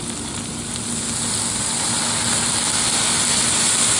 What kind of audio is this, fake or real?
real